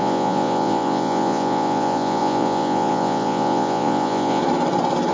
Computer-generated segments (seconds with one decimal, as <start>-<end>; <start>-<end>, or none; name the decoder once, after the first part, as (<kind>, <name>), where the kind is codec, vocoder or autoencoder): 0.0-4.4 (vocoder, Vocos)